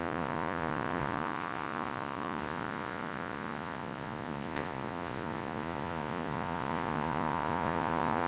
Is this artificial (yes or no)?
yes